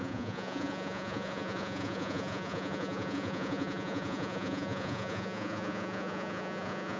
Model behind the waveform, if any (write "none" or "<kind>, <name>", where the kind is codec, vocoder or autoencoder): vocoder, Vocos